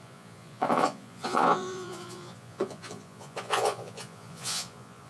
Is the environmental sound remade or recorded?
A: remade